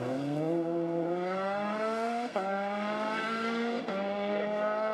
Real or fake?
fake